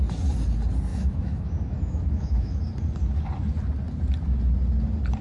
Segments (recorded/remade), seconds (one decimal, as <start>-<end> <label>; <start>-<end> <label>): 0.0-0.9 recorded; 0.9-2.6 remade; 2.6-5.2 recorded